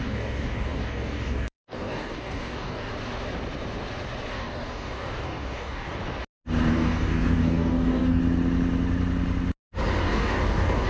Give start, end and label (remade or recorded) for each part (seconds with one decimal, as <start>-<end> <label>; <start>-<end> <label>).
0.0-2.9 remade; 2.9-4.3 recorded; 4.3-6.0 remade; 6.0-6.7 recorded; 6.7-8.2 remade; 8.2-10.0 recorded; 10.0-10.9 remade